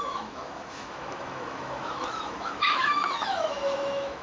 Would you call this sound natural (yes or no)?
no